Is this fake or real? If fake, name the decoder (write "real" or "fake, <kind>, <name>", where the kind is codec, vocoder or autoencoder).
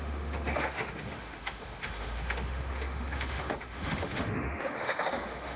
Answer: fake, autoencoder, DAC-VAE